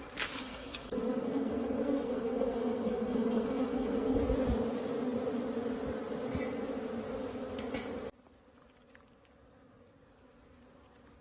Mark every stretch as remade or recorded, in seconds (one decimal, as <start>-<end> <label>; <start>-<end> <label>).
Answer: 0.0-0.4 recorded; 0.4-4.2 remade; 4.2-11.2 recorded